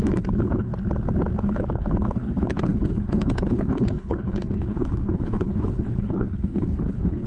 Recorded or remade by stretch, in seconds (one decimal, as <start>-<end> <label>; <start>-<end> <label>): 0.0-0.7 remade; 0.7-1.4 recorded; 1.4-7.3 remade